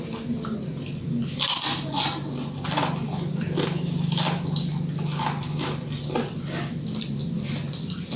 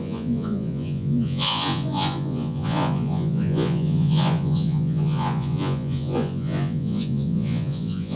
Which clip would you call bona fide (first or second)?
first